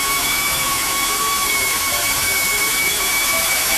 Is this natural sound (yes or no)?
no